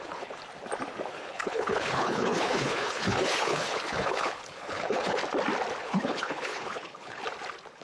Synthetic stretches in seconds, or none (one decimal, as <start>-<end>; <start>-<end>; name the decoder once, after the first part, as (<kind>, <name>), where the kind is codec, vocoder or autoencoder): 0.0-0.4 (codec, HILCodec); 1.1-5.2; 5.8-7.2